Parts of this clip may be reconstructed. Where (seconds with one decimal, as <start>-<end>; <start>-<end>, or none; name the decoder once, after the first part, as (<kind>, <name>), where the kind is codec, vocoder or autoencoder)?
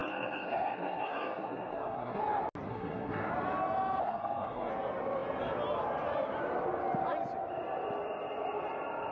0.0-2.2 (codec, SNAC); 2.7-3.3; 4.0-4.7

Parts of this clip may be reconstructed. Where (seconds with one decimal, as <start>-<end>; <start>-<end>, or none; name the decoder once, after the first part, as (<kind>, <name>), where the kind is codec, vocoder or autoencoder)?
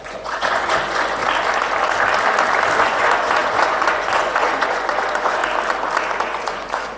0.0-1.2 (vocoder, Vocos); 2.8-5.4; 6.2-7.0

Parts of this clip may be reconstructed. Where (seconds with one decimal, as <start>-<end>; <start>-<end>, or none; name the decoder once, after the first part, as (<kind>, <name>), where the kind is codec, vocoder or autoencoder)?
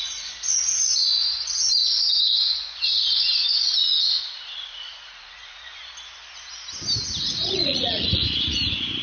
0.0-5.8 (vocoder, Vocos); 7.3-8.2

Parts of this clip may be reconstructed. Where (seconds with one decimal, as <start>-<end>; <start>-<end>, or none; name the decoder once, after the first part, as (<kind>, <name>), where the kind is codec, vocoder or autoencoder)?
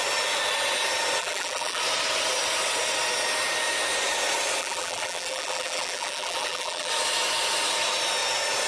1.2-1.8 (vocoder, BigVGAN v2); 4.6-6.9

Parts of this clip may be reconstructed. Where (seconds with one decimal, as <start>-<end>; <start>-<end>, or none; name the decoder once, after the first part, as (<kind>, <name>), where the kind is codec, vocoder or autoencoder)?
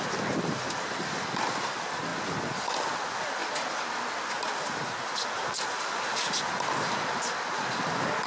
none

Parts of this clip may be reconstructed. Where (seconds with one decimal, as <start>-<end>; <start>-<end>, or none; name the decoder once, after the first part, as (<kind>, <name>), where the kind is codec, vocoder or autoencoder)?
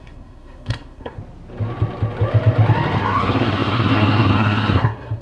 0.0-1.2 (codec, SNAC); 3.0-5.2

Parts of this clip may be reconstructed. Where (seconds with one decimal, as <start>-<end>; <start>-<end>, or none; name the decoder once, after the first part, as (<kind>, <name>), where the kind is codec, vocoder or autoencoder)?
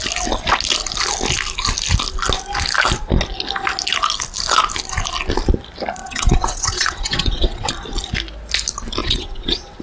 6.0-7.7 (vocoder, WaveNeXt); 9.0-9.8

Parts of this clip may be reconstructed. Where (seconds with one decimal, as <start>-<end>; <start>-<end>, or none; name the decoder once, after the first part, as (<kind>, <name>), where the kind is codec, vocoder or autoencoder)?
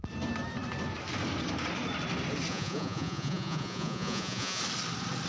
2.5-4.6 (vocoder, Vocos)